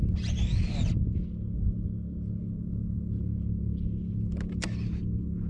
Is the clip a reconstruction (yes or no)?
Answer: no